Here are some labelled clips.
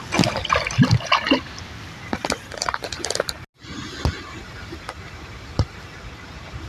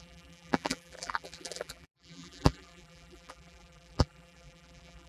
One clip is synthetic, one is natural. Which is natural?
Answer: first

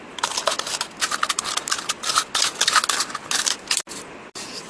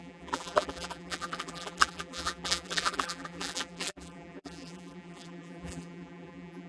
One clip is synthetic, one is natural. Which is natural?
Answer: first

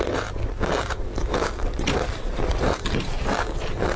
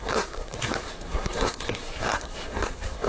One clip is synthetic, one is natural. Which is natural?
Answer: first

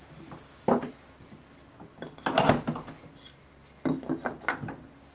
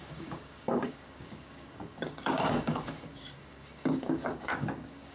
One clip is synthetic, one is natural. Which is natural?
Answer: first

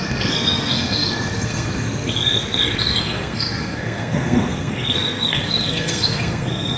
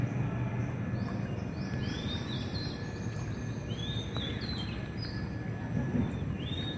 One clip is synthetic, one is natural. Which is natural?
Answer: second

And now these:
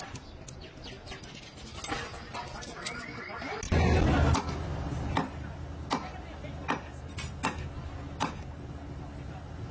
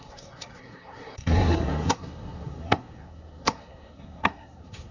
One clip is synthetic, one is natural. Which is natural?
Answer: first